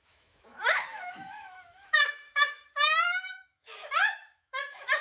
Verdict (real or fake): fake